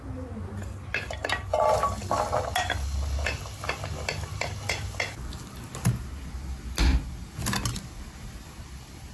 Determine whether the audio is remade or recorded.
recorded